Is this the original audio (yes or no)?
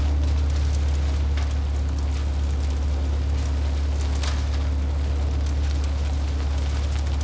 yes